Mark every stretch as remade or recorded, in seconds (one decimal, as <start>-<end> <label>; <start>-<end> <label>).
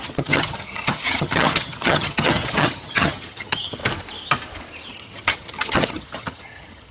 0.0-3.8 remade; 3.8-4.9 recorded; 4.9-6.9 remade